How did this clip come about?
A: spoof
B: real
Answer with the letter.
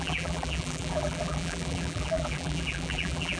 A